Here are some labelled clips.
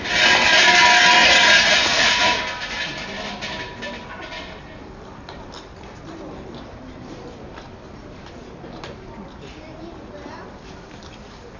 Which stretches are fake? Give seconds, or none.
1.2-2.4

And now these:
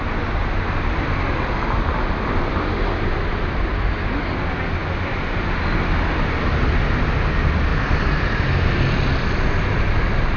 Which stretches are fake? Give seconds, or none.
7.7-8.4

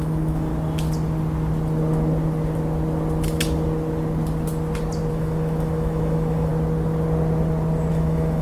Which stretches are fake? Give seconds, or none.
0.0-0.5; 5.1-6.5; 7.9-8.4

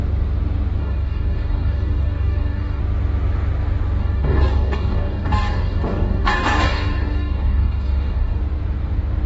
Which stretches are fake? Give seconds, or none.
0.8-2.8; 4.0-8.4

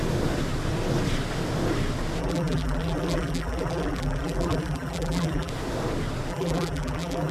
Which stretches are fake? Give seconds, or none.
2.2-5.5; 6.3-7.3

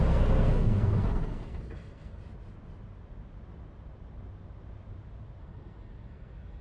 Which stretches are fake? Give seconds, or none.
0.0-2.2; 5.4-6.6